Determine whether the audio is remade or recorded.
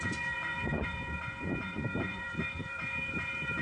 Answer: remade